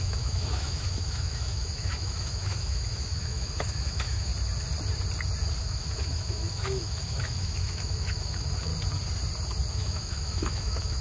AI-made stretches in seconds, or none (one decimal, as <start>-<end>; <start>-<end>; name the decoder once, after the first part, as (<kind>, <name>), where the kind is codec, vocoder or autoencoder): 0.0-4.3 (autoencoder, DAC-VAE); 5.6-8.7; 9.7-11.0